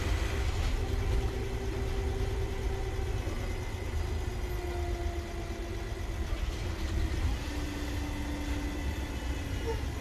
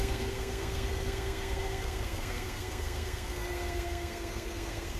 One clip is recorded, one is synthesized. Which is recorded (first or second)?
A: first